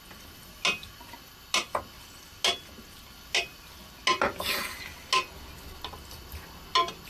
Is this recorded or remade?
recorded